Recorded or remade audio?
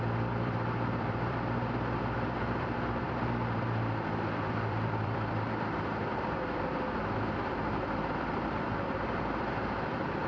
remade